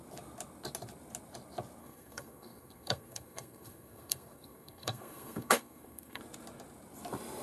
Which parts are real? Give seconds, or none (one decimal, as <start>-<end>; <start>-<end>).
0.0-1.8; 6.2-7.4